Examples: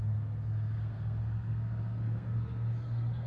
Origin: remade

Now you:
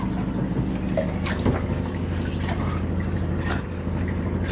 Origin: recorded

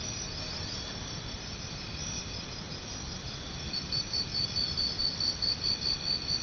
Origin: recorded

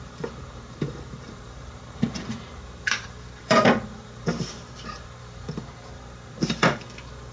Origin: remade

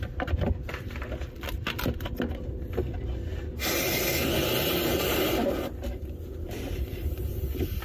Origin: recorded